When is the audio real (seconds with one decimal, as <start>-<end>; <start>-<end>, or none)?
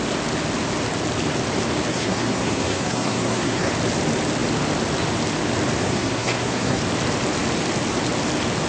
0.0-1.9; 3.7-5.8; 6.8-8.7